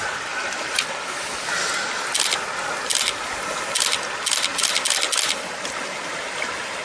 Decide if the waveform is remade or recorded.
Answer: recorded